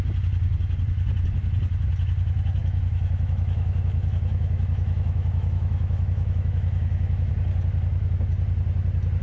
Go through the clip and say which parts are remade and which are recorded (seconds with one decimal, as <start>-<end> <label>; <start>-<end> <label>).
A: 0.0-2.6 recorded; 2.6-7.3 remade; 7.3-9.2 recorded